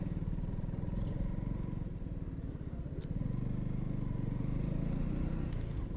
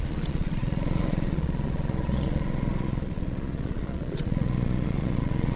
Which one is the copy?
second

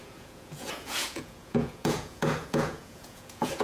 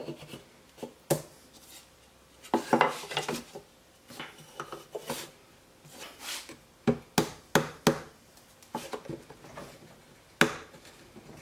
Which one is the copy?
first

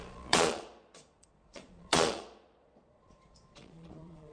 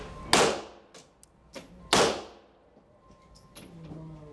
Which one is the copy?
first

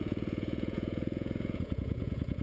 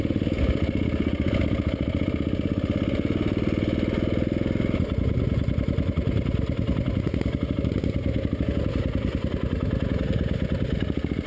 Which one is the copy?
first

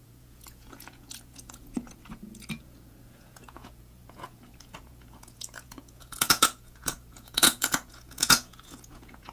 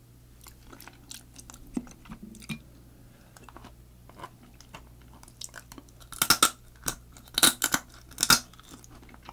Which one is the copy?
first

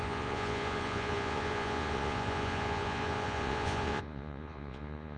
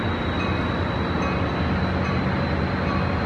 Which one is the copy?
first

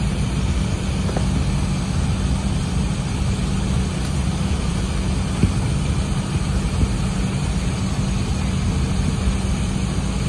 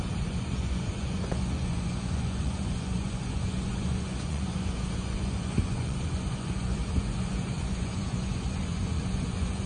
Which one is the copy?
second